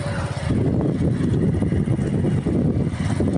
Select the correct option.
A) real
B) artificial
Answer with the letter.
A